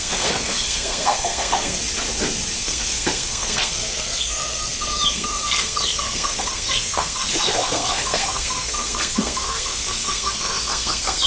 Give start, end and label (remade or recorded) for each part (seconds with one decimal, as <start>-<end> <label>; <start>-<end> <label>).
0.0-1.8 remade; 1.8-2.6 recorded; 2.6-11.3 remade